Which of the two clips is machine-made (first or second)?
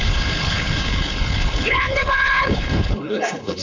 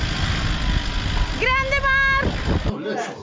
first